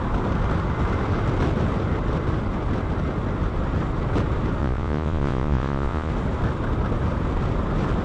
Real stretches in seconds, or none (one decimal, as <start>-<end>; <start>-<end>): 0.0-4.6; 6.1-8.0